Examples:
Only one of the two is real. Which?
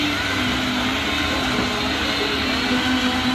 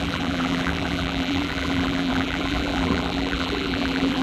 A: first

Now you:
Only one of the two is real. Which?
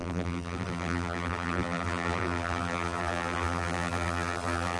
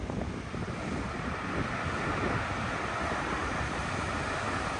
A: second